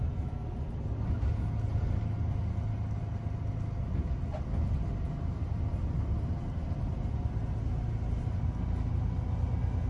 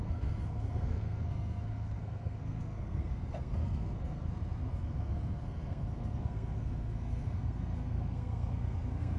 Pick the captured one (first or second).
first